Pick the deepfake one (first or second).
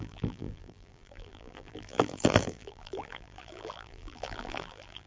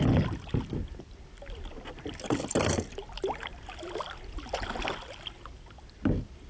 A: first